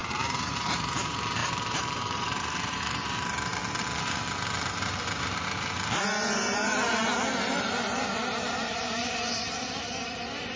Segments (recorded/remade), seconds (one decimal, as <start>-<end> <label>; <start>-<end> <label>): 0.0-3.6 remade; 3.6-4.6 recorded; 4.6-10.6 remade